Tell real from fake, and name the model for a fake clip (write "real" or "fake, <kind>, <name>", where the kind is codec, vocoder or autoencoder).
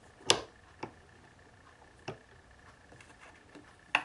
real